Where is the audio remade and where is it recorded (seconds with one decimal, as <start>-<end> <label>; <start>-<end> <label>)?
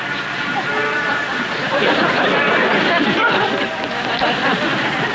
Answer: 0.0-0.8 recorded; 0.8-2.1 remade; 2.1-3.2 recorded; 3.2-3.8 remade; 3.8-5.1 recorded